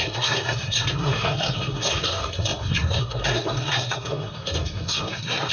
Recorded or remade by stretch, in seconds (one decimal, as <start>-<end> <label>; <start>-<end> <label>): 0.0-5.5 remade